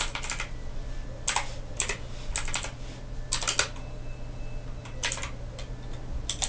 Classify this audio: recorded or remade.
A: recorded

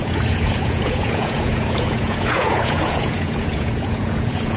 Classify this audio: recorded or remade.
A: remade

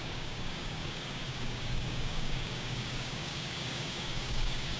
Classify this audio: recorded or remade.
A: remade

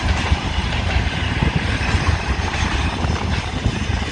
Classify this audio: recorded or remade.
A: remade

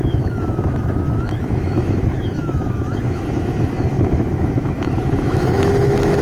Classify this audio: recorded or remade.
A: remade